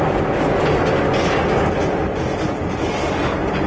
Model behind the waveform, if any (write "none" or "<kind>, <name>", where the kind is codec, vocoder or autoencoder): none